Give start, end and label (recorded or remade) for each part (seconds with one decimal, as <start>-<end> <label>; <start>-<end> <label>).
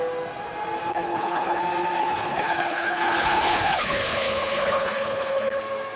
0.0-0.9 recorded; 0.9-1.6 remade; 1.6-2.0 recorded; 2.0-5.6 remade; 5.6-6.0 recorded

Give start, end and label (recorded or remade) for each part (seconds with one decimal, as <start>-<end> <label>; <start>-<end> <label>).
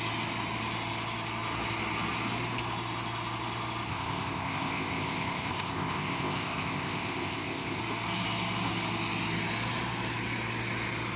0.0-3.9 recorded; 3.9-7.8 remade; 7.8-11.2 recorded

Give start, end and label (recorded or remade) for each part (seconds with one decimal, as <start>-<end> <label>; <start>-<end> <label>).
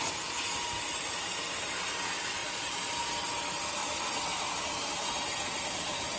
0.0-2.4 recorded; 2.4-3.1 remade; 3.1-6.2 recorded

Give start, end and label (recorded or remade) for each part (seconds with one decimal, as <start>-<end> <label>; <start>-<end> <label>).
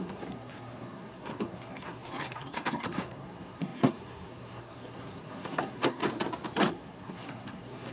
0.0-6.0 remade; 6.0-6.7 recorded; 6.7-7.9 remade